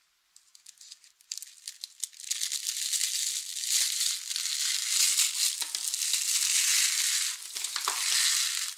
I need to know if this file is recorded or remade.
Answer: recorded